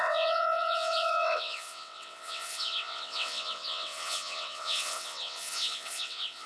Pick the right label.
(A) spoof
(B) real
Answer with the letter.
A